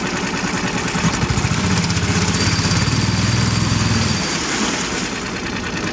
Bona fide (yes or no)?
yes